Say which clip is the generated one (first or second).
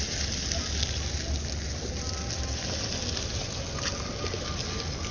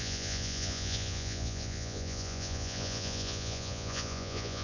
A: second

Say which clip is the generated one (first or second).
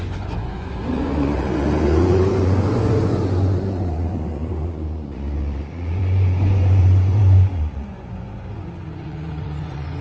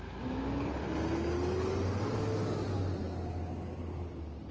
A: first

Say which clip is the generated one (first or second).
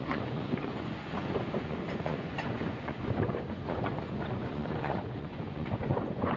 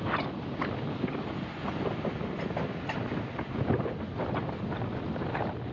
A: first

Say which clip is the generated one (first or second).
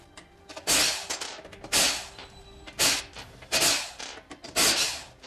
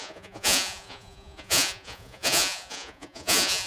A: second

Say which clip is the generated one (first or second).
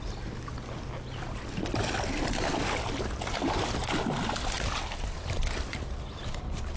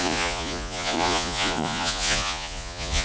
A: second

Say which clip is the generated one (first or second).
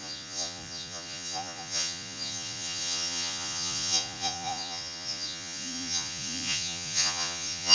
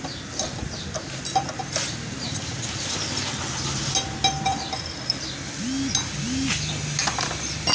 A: first